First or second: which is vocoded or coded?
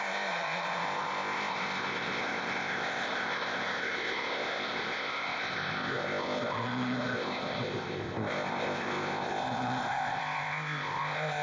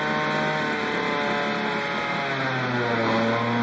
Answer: first